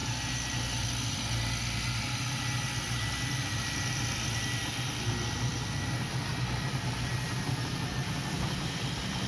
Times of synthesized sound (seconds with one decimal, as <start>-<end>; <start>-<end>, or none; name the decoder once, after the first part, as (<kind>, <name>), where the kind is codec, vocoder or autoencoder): 2.6-9.3 (vocoder, BigVGAN v2)